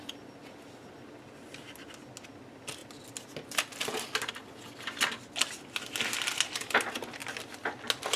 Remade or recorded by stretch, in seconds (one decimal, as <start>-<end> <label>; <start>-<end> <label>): 0.0-8.2 recorded